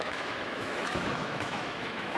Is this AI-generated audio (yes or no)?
yes